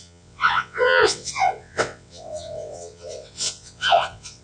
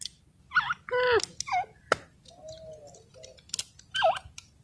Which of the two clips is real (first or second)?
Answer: second